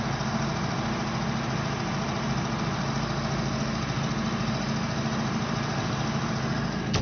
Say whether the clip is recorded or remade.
recorded